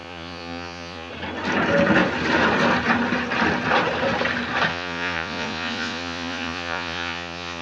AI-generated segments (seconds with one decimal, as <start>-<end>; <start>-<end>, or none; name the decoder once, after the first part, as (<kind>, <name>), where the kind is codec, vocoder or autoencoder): 0.0-1.1 (vocoder, Vocos); 4.7-7.6